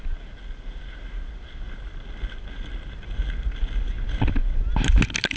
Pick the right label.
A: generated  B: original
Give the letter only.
B